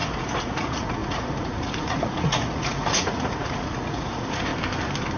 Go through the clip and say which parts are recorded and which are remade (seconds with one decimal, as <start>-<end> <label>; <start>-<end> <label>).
0.0-4.5 remade; 4.5-5.2 recorded